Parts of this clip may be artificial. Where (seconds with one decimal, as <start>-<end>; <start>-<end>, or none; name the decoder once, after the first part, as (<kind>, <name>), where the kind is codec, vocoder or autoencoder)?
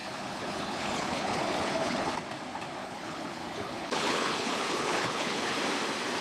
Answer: 0.0-2.1 (codec, HILCodec); 2.8-5.6